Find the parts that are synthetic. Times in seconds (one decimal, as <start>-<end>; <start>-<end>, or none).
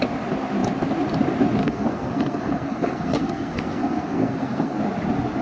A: 1.6-4.8